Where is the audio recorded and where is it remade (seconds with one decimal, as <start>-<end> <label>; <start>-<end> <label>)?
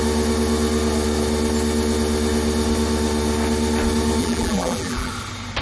0.0-4.2 recorded; 4.2-5.1 remade; 5.1-5.6 recorded